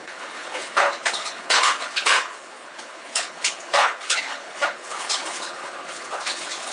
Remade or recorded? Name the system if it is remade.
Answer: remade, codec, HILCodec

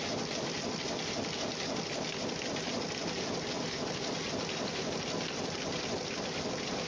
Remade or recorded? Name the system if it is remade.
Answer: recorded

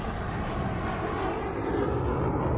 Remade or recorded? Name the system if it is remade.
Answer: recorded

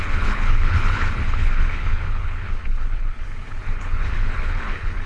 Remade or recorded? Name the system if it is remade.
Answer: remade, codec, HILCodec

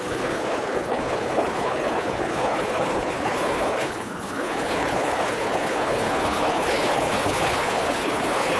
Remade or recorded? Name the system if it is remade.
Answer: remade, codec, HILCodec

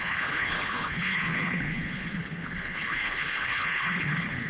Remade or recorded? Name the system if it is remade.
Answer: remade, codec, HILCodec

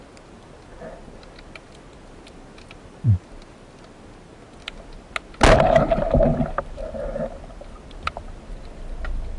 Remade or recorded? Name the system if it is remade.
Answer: recorded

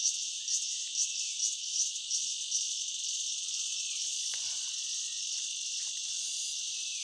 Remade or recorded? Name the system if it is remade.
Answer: recorded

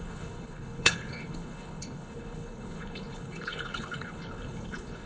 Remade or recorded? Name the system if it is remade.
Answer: remade, codec, HILCodec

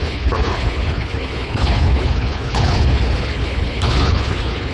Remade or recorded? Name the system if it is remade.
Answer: remade, codec, HILCodec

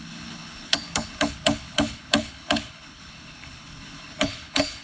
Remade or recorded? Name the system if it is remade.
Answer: remade, codec, HILCodec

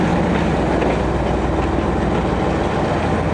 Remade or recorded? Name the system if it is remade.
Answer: recorded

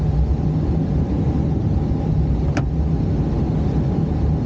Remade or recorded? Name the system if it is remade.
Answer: recorded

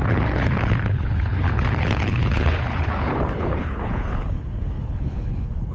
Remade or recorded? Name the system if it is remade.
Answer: remade, codec, HILCodec